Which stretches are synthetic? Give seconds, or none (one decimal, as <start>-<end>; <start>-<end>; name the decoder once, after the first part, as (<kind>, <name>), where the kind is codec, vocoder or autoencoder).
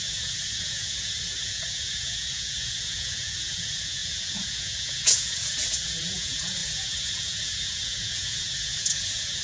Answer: 0.0-9.4 (vocoder, Vocos)